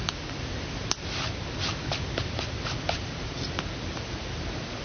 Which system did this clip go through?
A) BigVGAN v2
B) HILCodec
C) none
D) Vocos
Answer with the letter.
C